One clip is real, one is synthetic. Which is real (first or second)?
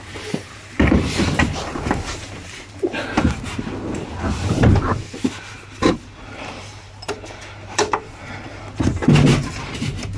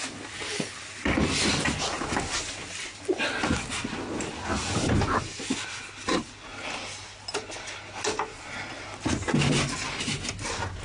second